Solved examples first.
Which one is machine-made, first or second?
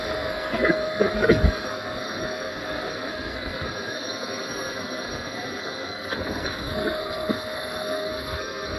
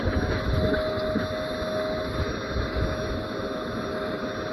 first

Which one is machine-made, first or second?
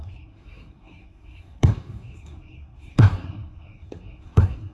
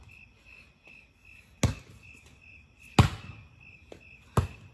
first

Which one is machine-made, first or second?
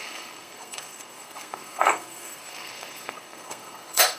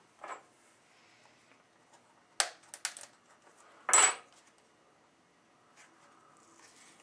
first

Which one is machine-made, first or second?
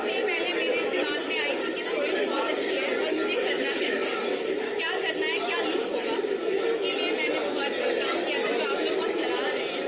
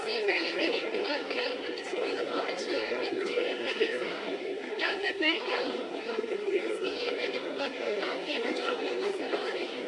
second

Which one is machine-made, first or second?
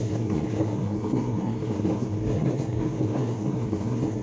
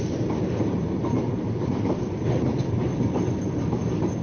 first